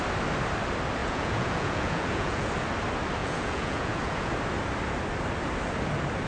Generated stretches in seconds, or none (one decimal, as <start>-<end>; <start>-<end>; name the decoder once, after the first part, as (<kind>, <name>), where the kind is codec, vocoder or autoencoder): 1.0-2.5 (vocoder, Vocos); 3.2-4.3